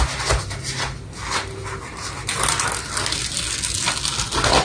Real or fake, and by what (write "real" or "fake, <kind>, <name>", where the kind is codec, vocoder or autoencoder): real